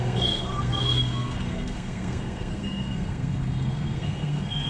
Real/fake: fake